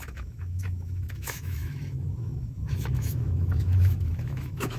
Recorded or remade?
remade